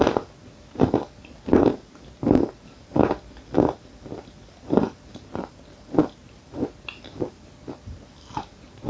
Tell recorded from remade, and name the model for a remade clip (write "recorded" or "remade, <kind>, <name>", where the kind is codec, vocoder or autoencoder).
recorded